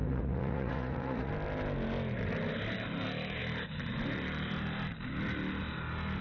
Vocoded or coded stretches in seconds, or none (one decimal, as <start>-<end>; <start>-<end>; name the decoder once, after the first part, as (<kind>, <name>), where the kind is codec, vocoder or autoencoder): 0.0-1.3 (vocoder, Vocos)

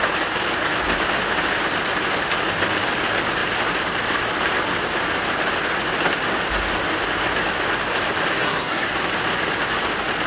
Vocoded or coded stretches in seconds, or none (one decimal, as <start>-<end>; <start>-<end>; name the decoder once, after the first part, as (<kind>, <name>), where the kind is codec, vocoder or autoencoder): 8.4-8.9 (codec, SNAC)